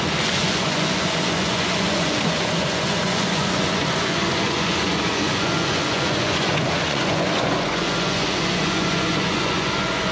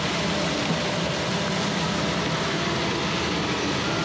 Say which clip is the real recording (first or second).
second